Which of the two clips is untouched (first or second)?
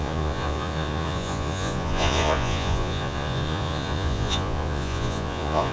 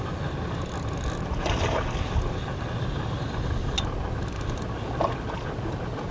second